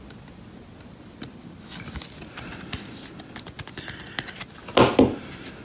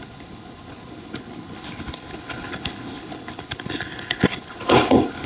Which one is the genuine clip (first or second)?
first